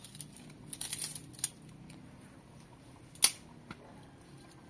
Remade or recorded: recorded